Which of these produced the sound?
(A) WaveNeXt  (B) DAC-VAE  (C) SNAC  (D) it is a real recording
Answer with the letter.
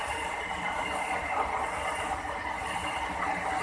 D